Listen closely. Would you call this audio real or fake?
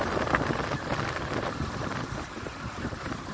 real